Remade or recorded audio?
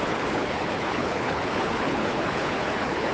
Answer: remade